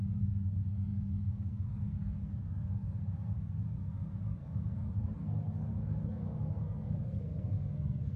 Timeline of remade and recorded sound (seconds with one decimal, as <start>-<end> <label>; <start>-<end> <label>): 0.0-8.2 remade